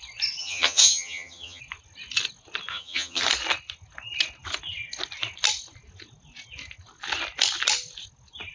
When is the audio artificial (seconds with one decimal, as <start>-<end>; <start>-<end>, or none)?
0.4-1.6; 2.7-3.2